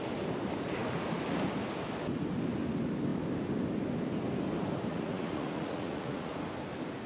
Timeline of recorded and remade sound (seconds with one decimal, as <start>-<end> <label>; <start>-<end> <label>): 0.0-4.9 recorded; 4.9-6.3 remade; 6.3-7.1 recorded